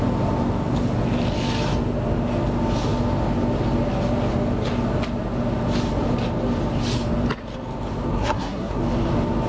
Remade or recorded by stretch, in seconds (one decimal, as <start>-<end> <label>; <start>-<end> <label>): 0.0-8.1 recorded; 8.1-8.8 remade; 8.8-9.5 recorded